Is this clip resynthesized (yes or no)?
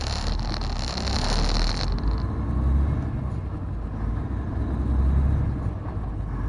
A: no